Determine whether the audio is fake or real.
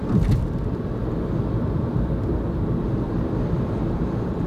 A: fake